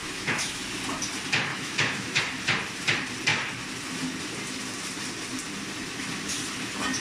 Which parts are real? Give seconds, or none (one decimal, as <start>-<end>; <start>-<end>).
0.6-1.5; 2.2-7.0

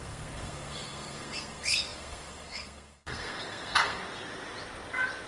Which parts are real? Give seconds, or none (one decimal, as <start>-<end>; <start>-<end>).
4.0-5.3